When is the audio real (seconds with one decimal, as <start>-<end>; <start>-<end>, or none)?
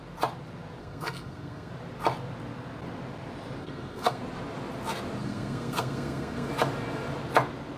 0.0-0.8; 1.7-3.6; 4.2-5.2; 6.5-7.8